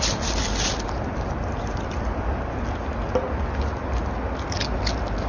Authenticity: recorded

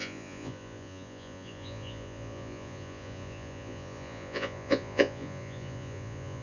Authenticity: remade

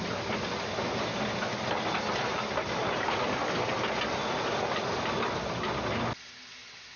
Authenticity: recorded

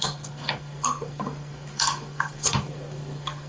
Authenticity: remade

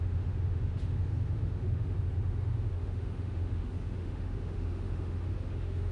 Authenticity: remade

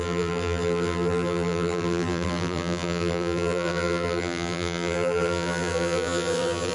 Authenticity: remade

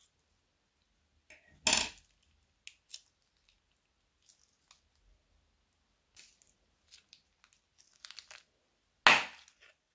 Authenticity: recorded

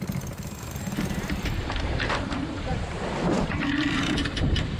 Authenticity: remade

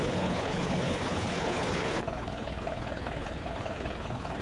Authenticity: remade